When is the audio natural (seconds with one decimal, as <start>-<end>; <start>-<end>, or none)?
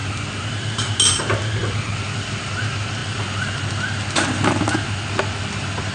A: 0.0-5.9